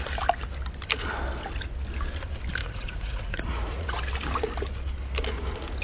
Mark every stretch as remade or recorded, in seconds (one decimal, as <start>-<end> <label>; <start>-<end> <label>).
0.0-2.6 recorded; 2.6-4.0 remade; 4.0-5.8 recorded